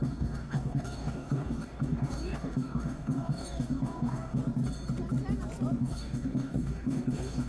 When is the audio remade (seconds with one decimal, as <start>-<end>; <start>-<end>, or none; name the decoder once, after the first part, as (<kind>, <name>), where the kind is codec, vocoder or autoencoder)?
0.0-4.4 (codec, DAC); 5.8-7.5